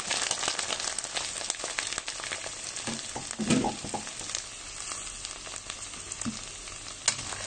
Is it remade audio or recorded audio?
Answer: recorded